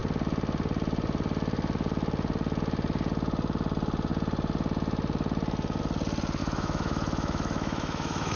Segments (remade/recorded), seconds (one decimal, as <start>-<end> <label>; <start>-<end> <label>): 0.0-6.4 recorded; 6.4-8.4 remade